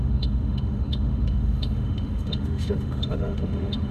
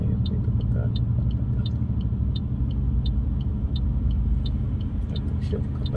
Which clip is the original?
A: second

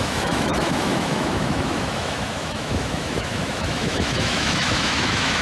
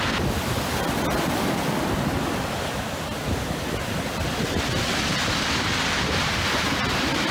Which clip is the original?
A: second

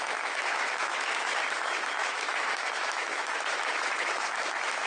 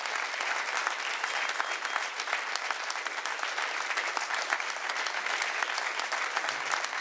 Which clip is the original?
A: second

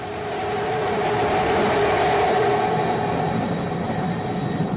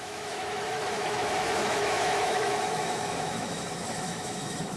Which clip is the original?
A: first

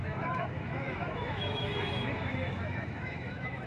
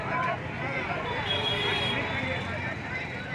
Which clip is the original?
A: second